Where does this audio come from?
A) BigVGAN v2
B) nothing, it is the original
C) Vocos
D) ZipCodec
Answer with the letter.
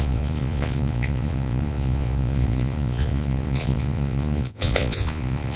C